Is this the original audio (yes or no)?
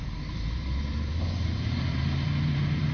no